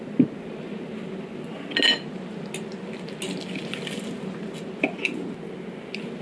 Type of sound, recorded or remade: recorded